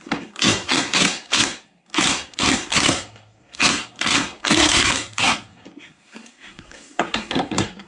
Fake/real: fake